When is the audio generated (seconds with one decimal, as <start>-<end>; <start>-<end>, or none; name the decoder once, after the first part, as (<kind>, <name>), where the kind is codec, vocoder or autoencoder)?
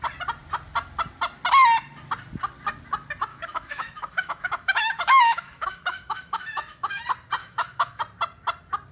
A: 3.3-7.0 (autoencoder, DAC-VAE); 7.4-8.0